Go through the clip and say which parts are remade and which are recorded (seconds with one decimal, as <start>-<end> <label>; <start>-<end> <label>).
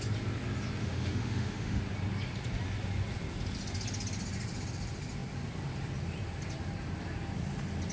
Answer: 0.0-0.8 recorded; 0.8-1.8 remade; 1.8-7.9 recorded